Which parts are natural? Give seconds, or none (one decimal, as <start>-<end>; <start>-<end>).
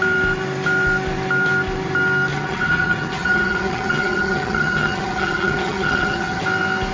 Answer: 0.0-2.3; 6.4-6.9